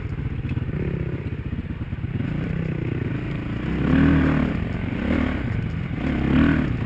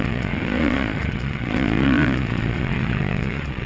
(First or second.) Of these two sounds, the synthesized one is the second